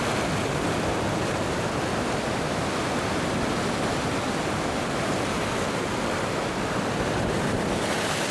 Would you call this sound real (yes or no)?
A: yes